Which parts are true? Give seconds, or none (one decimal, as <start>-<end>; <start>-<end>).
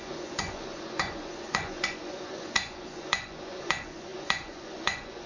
none